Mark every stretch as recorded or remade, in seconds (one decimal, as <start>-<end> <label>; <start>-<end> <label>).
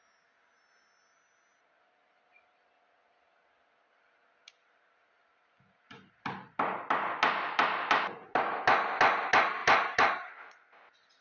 0.0-11.2 recorded